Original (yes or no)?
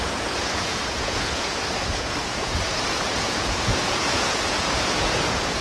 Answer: no